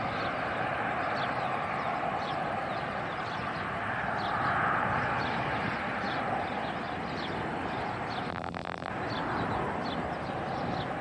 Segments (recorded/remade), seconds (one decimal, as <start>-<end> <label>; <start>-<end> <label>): 0.0-8.3 recorded; 8.3-8.9 remade; 8.9-11.0 recorded